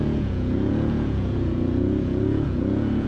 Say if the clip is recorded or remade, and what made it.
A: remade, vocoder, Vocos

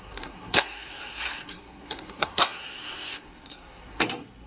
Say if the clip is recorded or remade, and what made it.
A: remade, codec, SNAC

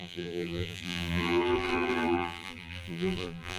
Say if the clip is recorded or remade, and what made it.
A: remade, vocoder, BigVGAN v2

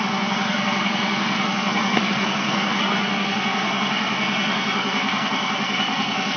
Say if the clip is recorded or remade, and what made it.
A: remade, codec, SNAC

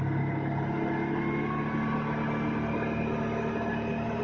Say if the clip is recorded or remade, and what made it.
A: recorded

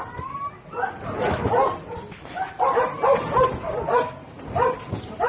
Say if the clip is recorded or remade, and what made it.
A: recorded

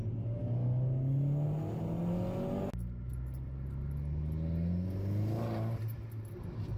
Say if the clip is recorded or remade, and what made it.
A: recorded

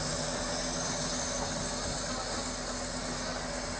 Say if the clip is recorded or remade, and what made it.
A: recorded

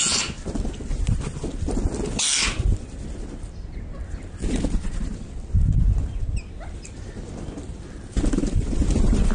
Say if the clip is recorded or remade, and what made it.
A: remade, vocoder, BigVGAN v2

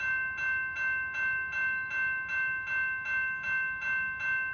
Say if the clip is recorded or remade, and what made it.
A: recorded